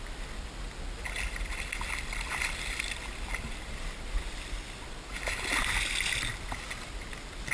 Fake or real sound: real